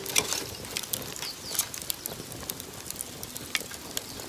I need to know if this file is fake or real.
real